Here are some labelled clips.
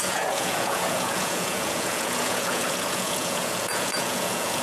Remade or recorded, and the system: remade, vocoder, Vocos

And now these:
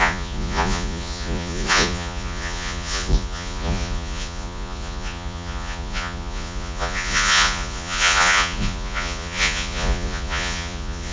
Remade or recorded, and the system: remade, vocoder, Vocos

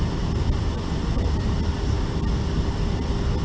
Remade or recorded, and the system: recorded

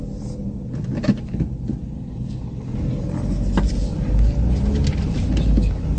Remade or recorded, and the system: recorded